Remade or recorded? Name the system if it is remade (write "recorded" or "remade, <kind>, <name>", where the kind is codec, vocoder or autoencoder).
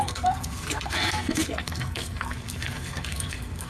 remade, codec, SNAC